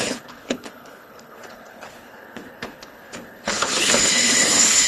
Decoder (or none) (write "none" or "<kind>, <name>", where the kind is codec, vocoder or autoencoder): codec, HILCodec